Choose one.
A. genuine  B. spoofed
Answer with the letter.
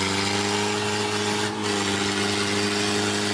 A